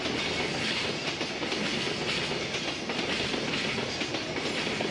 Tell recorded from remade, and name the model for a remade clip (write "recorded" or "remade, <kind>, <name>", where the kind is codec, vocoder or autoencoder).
recorded